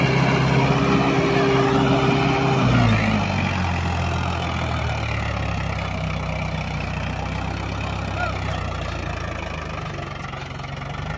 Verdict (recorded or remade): recorded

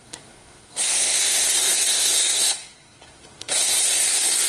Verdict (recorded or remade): remade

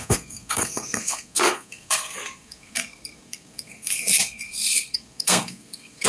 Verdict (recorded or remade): remade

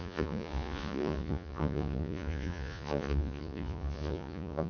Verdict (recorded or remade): remade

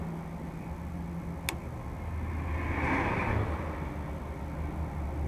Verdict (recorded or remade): recorded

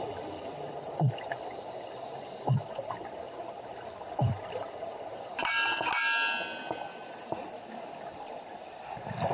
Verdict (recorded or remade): recorded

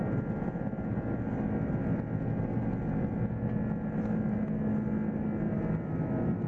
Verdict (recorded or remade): recorded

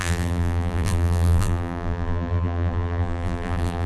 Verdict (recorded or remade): remade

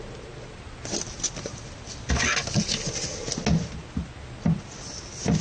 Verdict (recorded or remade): recorded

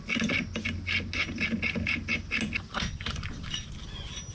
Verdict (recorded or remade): recorded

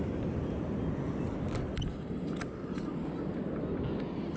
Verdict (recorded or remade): recorded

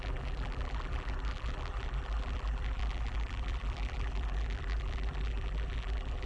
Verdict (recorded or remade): remade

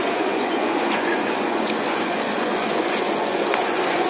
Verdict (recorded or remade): remade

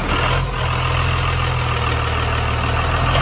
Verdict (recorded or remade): recorded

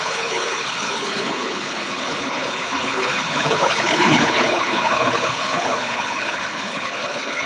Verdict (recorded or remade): remade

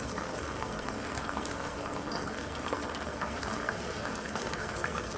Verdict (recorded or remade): remade